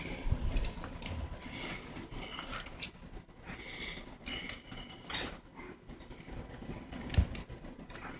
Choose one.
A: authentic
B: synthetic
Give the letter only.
A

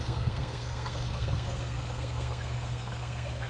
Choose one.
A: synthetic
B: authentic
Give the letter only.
A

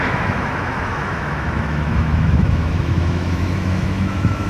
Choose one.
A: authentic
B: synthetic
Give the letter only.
B